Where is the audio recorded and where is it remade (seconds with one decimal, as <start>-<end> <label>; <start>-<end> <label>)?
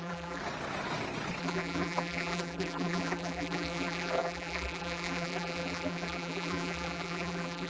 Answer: 0.0-0.4 remade; 0.4-1.4 recorded; 1.4-7.7 remade